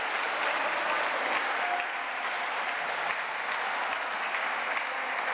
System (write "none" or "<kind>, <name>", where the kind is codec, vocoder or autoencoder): none